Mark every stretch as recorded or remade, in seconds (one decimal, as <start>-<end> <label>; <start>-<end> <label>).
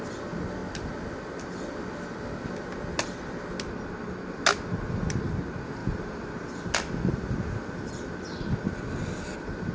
0.0-9.7 recorded